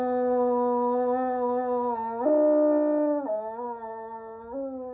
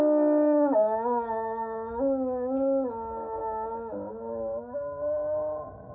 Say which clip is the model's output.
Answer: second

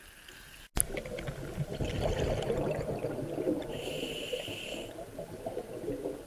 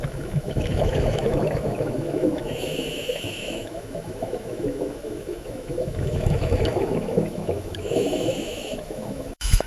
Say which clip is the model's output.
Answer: second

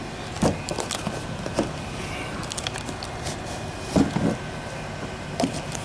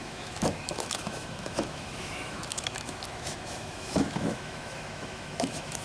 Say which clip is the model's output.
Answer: second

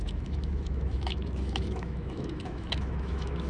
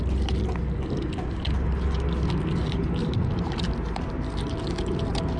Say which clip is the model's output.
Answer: first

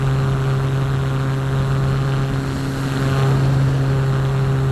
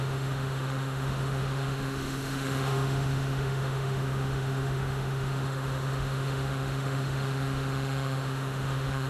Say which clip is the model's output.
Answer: second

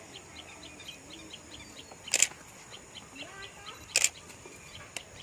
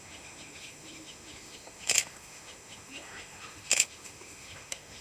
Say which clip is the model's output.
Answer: second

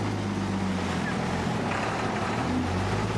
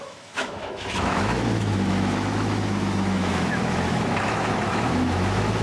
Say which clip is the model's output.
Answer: second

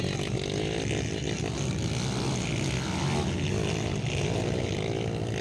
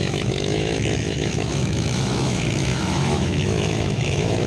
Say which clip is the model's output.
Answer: second